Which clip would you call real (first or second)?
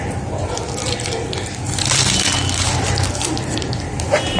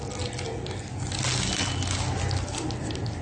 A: second